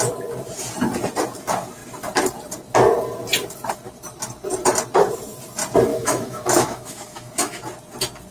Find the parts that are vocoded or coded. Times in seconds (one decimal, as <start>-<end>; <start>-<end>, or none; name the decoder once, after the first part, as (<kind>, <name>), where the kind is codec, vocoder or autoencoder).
5.9-7.6 (autoencoder, DAC-VAE)